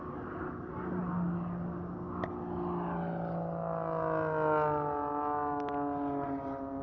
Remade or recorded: recorded